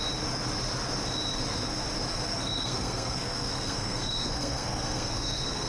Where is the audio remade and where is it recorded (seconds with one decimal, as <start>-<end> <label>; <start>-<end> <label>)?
0.0-2.1 recorded; 2.1-5.7 remade